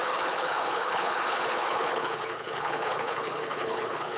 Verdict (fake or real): fake